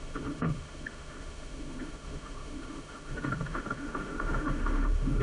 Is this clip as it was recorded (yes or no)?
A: no